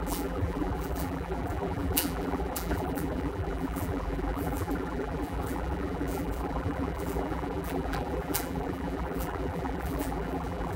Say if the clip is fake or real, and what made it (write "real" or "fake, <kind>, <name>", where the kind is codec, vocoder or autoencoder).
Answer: fake, vocoder, BigVGAN v2